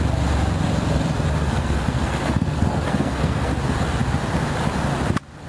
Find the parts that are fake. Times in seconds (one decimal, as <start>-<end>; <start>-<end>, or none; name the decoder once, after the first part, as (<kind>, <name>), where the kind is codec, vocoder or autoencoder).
1.4-3.5 (codec, SNAC)

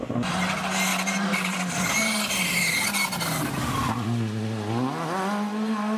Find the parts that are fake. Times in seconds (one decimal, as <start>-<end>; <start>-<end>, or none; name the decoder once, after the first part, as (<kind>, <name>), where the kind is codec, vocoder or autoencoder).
none

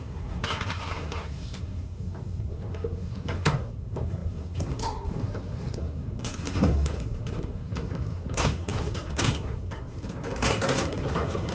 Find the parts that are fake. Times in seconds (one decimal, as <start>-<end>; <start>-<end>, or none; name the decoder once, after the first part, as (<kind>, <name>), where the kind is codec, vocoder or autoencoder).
0.0-11.5 (codec, SNAC)

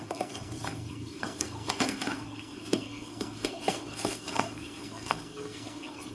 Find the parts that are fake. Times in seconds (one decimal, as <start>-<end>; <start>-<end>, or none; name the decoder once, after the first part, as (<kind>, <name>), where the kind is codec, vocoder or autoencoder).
0.0-6.1 (codec, SNAC)

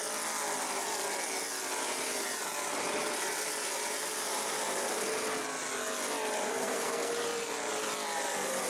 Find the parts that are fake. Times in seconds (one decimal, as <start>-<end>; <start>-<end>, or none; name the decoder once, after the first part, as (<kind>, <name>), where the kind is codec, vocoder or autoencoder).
6.5-7.1 (codec, SNAC)

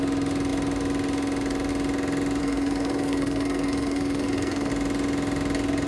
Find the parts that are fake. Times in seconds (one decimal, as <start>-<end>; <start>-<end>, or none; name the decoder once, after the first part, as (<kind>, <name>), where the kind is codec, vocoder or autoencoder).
2.4-4.7 (codec, SNAC)

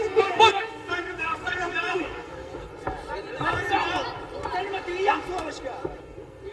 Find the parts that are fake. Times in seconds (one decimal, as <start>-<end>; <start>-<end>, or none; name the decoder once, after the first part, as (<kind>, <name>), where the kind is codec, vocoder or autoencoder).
0.0-2.7 (codec, SNAC); 6.0-6.5